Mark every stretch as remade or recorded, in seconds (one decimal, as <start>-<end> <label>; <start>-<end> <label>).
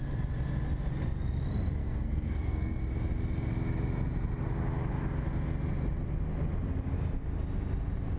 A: 0.0-1.8 recorded; 1.8-2.8 remade; 2.8-8.2 recorded